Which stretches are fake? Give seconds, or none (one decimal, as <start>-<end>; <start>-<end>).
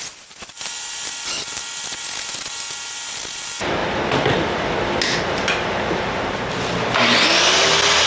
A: none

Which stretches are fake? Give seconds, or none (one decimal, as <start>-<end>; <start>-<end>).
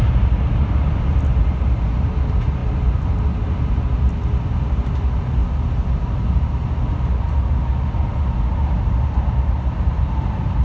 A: none